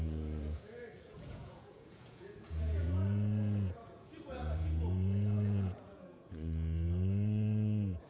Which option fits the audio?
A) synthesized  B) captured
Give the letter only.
A